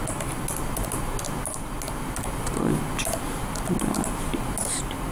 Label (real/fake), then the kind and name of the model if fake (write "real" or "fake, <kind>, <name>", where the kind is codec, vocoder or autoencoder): real